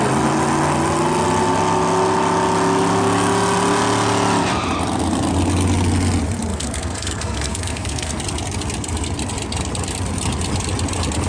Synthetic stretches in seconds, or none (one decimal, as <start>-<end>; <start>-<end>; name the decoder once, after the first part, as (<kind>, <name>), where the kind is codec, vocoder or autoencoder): 6.5-8.2 (codec, SNAC)